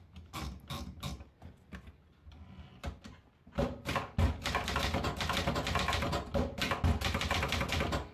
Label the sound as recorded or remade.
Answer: recorded